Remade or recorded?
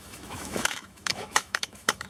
remade